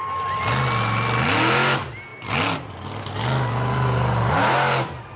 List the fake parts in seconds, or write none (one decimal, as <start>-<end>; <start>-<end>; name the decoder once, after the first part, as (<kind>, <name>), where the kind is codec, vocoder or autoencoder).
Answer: none